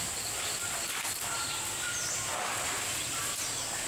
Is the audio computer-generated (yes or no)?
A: no